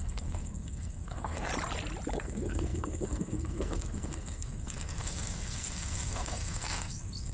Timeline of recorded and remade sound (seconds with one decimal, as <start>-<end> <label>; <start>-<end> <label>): 0.0-1.5 remade; 1.5-2.1 recorded; 2.1-7.3 remade